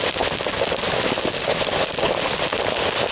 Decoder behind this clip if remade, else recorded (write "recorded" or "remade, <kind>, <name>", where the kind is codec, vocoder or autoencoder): recorded